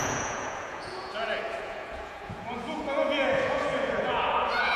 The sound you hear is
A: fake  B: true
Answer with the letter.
A